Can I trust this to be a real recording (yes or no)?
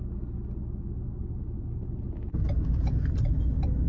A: yes